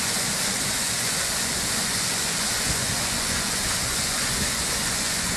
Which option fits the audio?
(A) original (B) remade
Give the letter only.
B